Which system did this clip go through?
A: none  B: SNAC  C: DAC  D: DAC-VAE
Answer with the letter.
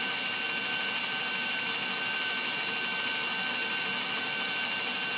A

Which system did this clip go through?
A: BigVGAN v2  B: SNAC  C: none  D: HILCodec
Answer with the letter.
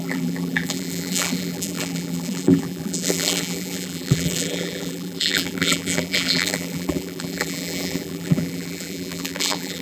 A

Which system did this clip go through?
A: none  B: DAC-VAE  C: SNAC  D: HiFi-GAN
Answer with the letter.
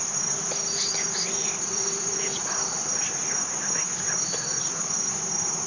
A